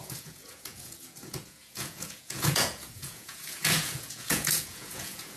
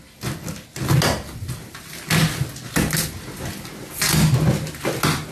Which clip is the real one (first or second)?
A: second